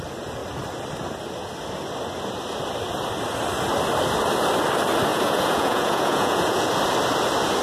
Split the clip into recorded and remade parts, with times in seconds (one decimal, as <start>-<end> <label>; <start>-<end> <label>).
0.0-5.1 recorded; 5.1-6.7 remade; 6.7-7.6 recorded